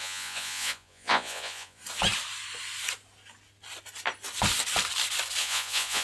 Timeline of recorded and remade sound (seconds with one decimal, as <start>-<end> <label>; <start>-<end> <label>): 0.0-1.8 remade; 1.8-5.4 recorded; 5.4-6.0 remade